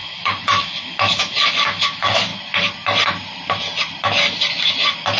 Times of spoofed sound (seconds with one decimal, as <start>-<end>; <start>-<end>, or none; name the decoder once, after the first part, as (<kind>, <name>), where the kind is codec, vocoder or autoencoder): 0.0-2.3 (autoencoder, DAC-VAE)